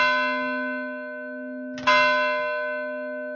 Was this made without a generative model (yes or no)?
yes